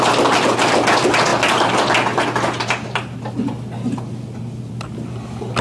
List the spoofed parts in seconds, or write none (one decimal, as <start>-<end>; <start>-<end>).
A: none